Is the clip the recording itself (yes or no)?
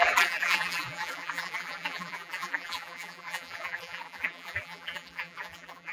no